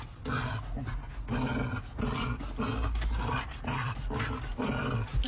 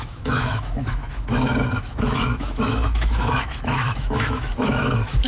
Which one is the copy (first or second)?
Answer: second